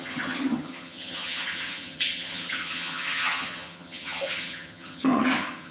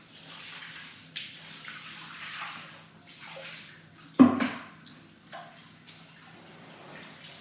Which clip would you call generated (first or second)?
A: first